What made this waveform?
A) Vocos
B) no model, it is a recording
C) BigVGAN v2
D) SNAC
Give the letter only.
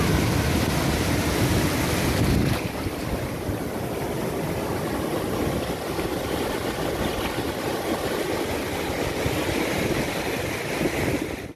B